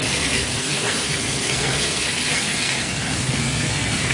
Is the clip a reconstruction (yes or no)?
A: yes